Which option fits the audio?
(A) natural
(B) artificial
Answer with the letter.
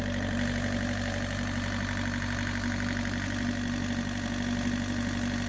A